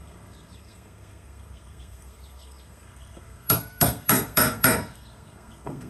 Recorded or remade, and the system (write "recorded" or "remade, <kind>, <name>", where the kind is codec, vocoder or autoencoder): remade, codec, SNAC